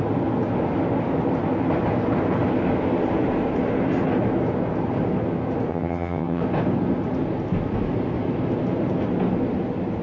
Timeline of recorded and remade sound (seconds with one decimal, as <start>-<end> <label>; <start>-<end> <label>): 0.0-5.7 recorded; 5.7-6.4 remade; 6.4-10.0 recorded